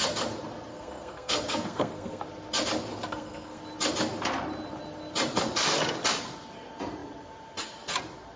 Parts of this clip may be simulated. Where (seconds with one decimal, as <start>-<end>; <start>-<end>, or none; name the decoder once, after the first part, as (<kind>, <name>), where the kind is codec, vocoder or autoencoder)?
0.7-2.2 (codec, SNAC); 2.9-3.6